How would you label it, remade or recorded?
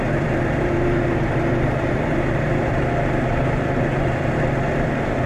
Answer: remade